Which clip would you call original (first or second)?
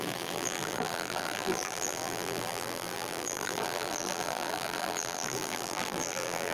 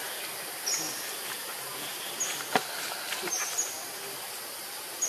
second